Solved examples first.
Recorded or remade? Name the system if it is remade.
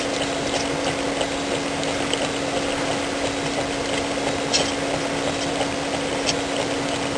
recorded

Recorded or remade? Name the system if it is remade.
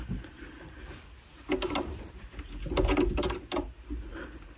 recorded